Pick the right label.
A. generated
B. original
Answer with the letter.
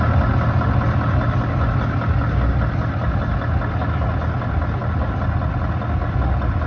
B